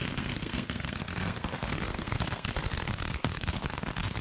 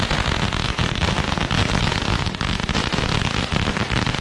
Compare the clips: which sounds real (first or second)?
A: second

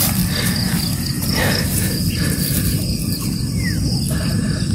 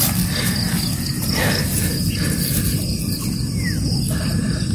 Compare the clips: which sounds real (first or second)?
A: second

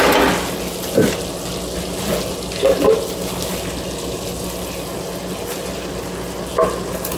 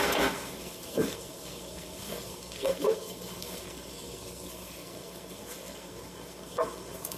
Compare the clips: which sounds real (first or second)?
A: first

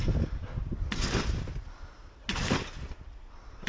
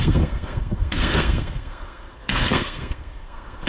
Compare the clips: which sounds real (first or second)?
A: first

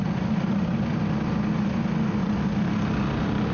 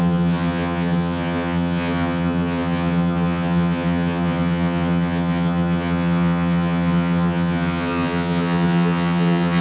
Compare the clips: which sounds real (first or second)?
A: first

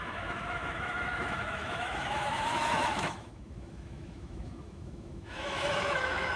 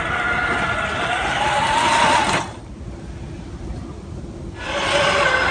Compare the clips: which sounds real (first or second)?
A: second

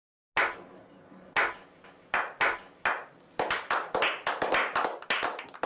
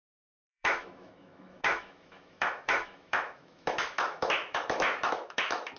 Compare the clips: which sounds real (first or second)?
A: first